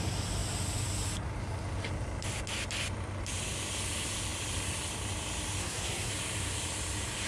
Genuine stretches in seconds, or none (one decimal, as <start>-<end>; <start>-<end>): 0.0-5.6; 6.1-7.3